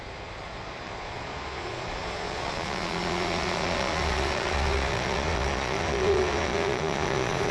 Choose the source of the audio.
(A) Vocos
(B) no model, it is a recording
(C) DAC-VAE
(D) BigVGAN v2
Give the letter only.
A